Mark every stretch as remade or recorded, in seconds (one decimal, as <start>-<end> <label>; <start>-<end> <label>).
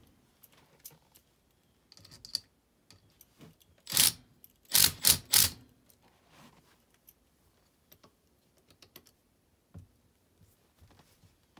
0.0-1.2 remade; 1.2-5.4 recorded; 5.4-11.6 remade